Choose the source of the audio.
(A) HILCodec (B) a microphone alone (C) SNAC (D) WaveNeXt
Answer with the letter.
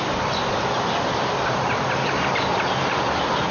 B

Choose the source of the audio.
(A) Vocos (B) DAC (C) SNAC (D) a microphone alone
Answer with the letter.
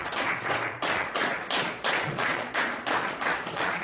A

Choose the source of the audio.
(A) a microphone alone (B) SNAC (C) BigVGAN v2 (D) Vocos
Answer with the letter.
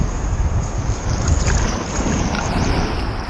C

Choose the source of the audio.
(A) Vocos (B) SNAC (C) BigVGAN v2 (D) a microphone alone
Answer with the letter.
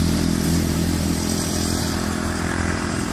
C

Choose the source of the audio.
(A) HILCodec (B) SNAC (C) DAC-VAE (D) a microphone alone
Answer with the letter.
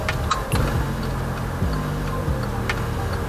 D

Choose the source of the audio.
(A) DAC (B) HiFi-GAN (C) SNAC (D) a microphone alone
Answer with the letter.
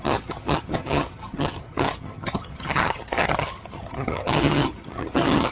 B